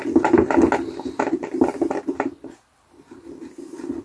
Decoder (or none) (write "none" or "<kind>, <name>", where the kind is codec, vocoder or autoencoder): none